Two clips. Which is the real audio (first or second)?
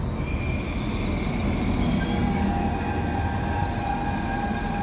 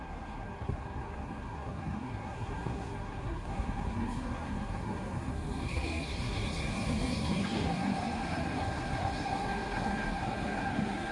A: first